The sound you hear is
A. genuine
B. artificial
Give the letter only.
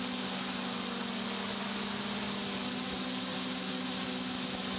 A